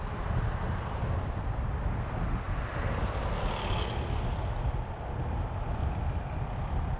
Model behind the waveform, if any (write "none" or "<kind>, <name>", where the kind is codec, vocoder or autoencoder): none